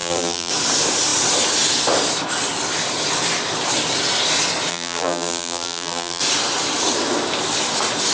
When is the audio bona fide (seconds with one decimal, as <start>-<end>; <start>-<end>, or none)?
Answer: 0.5-4.7; 6.2-8.1

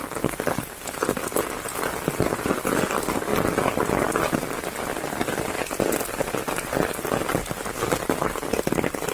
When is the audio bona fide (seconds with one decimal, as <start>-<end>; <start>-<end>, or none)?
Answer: 0.0-9.1

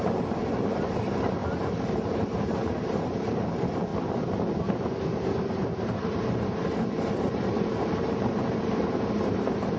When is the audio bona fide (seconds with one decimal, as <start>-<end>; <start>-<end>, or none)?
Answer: 3.9-5.5

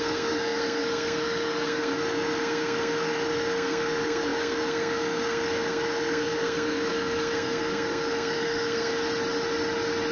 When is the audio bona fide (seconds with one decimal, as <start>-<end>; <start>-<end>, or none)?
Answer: 8.9-10.1

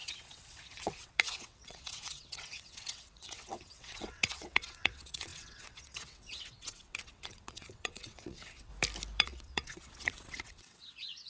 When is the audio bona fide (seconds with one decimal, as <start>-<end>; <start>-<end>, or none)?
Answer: 8.7-9.2

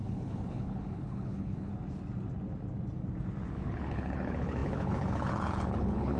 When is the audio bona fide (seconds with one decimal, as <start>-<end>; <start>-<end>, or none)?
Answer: 1.7-3.5